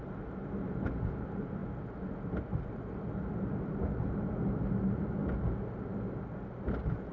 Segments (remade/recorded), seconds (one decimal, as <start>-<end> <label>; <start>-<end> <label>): 0.0-7.1 recorded